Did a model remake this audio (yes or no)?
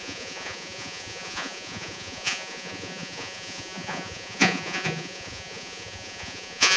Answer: yes